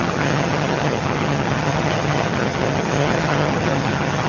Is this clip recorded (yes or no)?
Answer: no